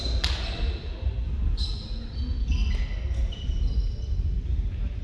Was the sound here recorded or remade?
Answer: recorded